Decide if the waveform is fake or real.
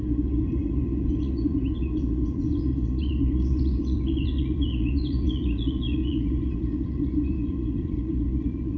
fake